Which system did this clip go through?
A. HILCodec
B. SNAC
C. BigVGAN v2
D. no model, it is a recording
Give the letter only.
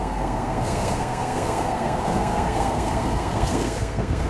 B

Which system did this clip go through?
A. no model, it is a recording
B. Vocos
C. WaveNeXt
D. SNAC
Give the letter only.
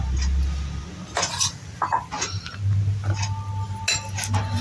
A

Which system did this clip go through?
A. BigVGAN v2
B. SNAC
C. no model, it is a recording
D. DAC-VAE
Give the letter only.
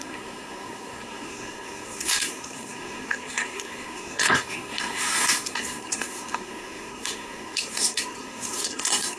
B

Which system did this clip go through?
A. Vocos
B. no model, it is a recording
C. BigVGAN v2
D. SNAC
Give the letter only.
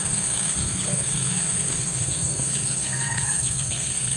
D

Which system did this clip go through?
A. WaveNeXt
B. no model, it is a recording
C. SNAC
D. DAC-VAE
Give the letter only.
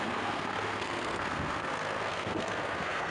C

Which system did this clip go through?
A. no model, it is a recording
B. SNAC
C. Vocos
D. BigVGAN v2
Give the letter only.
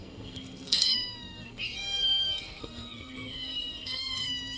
B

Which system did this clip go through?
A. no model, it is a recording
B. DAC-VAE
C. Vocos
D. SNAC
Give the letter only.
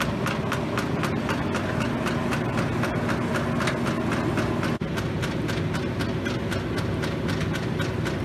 A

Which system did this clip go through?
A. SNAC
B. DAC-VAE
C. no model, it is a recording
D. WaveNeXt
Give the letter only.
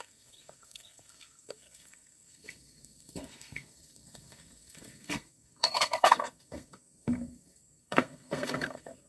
A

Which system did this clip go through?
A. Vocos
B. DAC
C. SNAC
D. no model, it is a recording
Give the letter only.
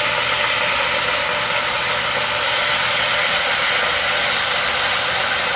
D